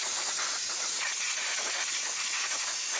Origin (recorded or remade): remade